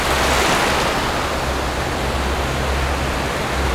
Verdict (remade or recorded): recorded